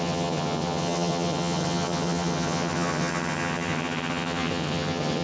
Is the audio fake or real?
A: fake